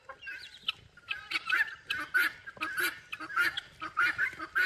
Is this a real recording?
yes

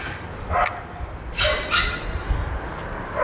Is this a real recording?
yes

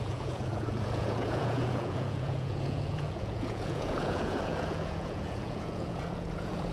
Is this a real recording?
no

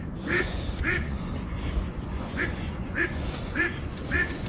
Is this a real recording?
no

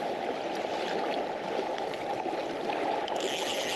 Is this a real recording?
yes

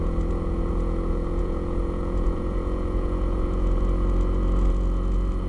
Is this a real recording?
no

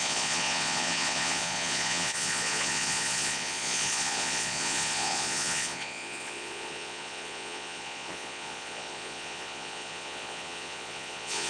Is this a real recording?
no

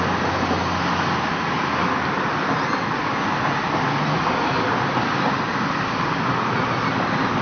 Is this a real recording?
yes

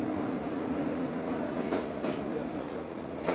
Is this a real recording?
no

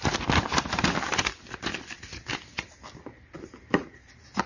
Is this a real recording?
yes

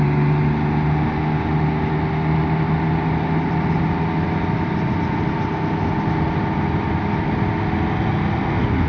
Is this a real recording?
yes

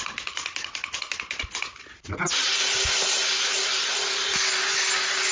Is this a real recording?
yes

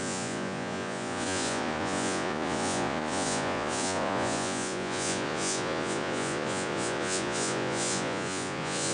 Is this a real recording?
no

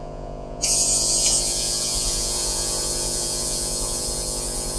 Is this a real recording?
no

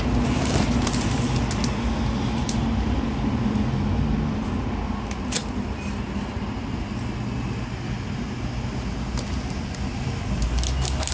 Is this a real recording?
yes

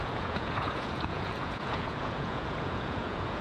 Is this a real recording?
no